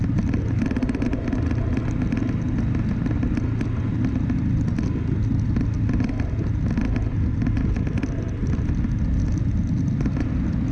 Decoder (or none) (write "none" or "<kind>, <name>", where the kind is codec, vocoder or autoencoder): none